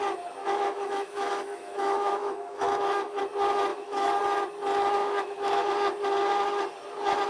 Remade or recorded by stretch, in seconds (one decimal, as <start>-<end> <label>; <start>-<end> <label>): 0.0-0.4 recorded; 0.4-3.2 remade; 3.2-3.7 recorded; 3.7-4.2 remade; 4.2-5.0 recorded; 5.0-5.7 remade; 5.7-7.3 recorded